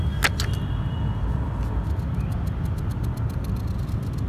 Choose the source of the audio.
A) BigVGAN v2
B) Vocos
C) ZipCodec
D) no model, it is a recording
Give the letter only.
D